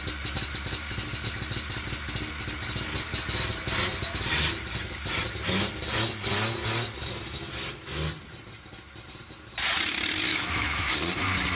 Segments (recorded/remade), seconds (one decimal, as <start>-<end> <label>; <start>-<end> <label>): 0.0-10.3 recorded; 10.3-10.9 remade; 10.9-11.6 recorded